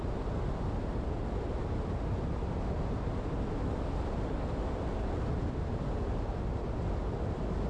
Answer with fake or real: real